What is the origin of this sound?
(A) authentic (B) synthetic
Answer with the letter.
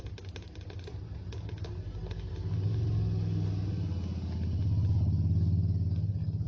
A